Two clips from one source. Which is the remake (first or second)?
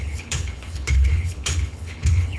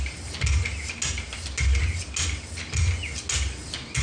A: first